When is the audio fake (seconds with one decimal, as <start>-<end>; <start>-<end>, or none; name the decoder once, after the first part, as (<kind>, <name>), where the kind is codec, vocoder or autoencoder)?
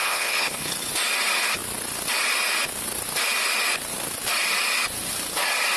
0.0-0.7 (codec, HILCodec)